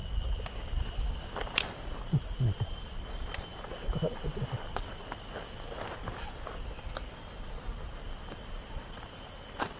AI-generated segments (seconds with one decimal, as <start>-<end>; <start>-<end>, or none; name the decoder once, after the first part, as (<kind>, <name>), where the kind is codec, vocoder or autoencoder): none